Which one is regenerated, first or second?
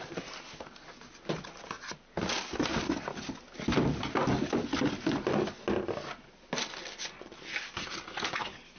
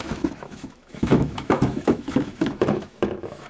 second